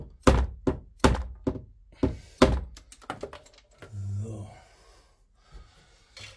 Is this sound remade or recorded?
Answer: recorded